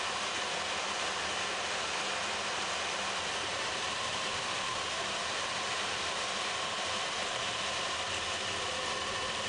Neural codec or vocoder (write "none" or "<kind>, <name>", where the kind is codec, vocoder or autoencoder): none